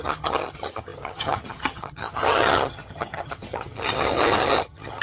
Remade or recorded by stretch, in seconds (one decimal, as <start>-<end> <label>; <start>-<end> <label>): 0.0-5.0 remade